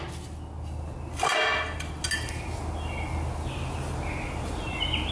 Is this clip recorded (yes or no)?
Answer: yes